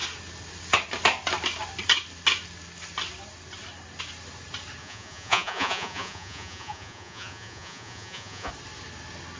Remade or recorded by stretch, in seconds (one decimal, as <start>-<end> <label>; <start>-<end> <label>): 0.0-4.8 recorded; 4.8-8.5 remade; 8.5-9.4 recorded